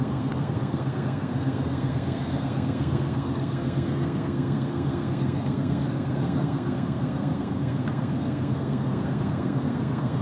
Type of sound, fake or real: fake